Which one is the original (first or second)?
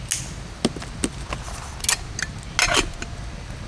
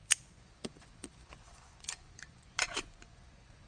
first